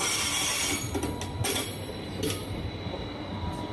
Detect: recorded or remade recorded